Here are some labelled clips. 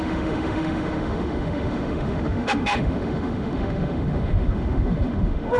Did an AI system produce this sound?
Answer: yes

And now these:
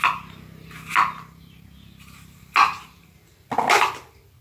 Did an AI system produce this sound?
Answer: no